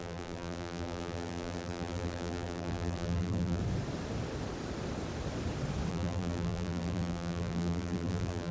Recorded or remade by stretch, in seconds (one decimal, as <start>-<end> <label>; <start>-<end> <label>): 0.0-3.6 remade; 3.6-5.9 recorded; 5.9-8.5 remade